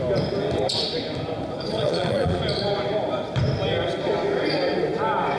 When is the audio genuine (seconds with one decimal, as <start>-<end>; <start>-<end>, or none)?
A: 0.0-1.7; 2.4-5.4